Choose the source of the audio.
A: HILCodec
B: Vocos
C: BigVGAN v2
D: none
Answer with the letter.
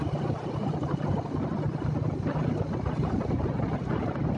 D